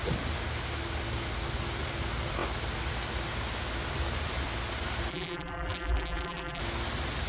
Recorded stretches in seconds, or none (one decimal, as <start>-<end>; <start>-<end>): 0.0-5.1; 6.6-7.3